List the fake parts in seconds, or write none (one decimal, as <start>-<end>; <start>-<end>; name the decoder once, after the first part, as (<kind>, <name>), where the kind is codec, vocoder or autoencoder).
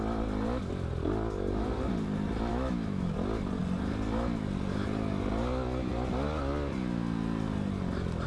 2.5-3.1 (autoencoder, DAC-VAE)